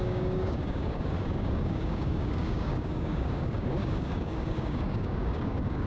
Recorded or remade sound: remade